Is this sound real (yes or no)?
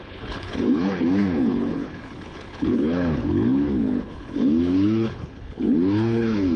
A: no